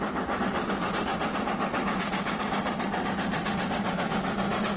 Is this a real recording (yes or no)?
yes